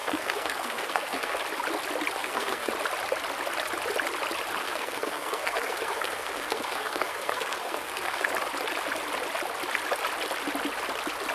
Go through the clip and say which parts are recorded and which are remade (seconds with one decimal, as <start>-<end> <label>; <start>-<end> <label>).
0.0-1.4 remade; 1.4-2.2 recorded; 2.2-2.7 remade; 2.7-4.6 recorded; 4.6-8.3 remade; 8.3-11.3 recorded